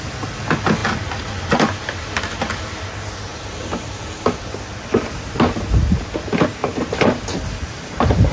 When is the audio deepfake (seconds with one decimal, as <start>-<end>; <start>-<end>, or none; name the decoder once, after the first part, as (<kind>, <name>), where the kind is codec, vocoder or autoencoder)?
3.3-4.0 (vocoder, BigVGAN v2); 6.6-7.2

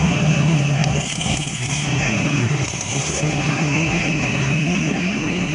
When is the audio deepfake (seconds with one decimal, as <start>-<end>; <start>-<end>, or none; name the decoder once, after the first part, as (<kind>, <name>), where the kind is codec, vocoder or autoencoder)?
0.0-5.5 (codec, SNAC)

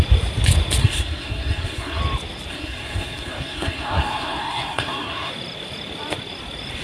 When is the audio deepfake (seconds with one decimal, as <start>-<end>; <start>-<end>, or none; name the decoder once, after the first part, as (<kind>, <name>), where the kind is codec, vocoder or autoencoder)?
0.8-2.0 (codec, SNAC); 2.5-5.3

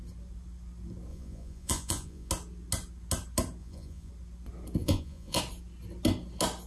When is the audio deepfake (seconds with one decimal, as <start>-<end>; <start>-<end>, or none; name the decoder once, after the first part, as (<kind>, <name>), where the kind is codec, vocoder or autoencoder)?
1.1-2.3 (vocoder, Vocos); 3.6-4.1; 4.8-5.4